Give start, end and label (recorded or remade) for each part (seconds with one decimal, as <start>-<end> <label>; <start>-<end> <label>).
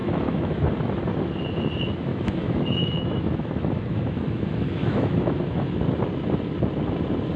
0.0-0.7 remade; 0.7-2.1 recorded; 2.1-5.8 remade; 5.8-7.4 recorded